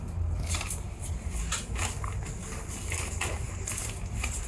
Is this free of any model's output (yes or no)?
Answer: yes